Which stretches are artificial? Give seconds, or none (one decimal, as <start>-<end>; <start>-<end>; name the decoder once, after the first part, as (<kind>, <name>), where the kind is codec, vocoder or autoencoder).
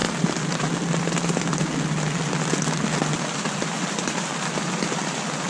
none